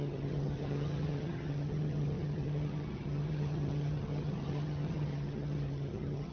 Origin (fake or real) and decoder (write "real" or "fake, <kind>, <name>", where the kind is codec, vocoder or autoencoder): fake, vocoder, HiFi-GAN